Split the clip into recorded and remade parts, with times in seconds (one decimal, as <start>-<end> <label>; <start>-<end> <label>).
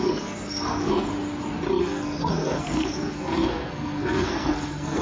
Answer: 0.0-1.1 remade; 1.1-1.8 recorded; 1.8-5.0 remade